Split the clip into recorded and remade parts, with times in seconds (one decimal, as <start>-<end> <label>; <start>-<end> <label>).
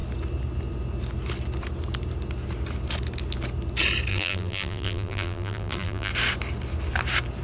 0.0-4.1 recorded; 4.1-6.1 remade; 6.1-7.4 recorded